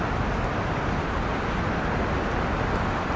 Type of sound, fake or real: real